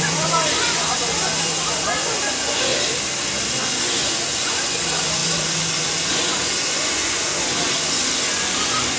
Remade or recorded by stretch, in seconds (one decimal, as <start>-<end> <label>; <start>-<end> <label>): 0.0-2.7 remade; 2.7-3.6 recorded; 3.6-9.0 remade